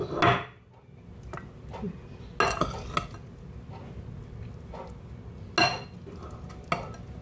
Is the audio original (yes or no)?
yes